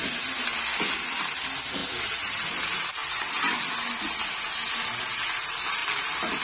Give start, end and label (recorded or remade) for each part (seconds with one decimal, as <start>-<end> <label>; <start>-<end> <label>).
0.0-1.8 recorded; 1.8-2.6 remade; 2.6-3.0 recorded; 3.0-3.9 remade; 3.9-6.4 recorded